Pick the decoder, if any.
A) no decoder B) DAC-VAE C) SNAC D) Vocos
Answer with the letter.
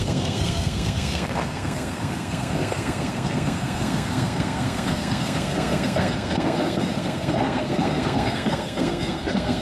C